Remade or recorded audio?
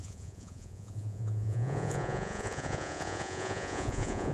remade